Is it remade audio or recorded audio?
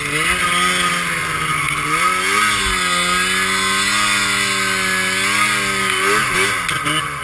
recorded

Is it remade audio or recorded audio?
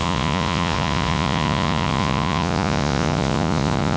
remade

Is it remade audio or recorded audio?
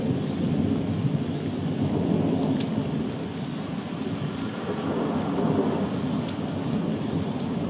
recorded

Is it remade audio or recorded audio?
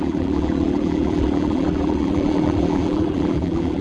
remade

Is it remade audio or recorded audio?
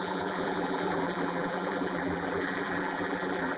remade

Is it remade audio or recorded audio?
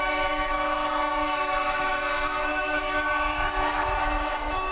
remade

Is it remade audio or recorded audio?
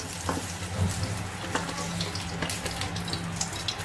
recorded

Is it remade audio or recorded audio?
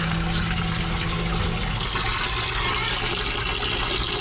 recorded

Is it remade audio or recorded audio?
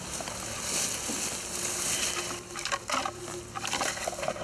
recorded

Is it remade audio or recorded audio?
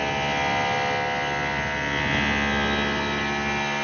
recorded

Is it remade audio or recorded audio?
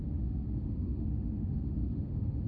remade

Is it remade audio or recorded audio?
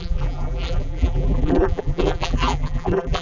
remade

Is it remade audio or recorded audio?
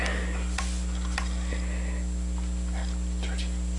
recorded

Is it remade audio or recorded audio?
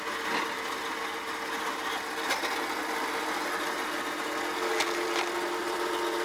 recorded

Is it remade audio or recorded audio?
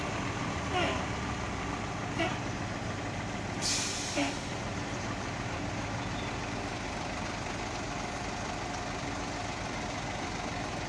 recorded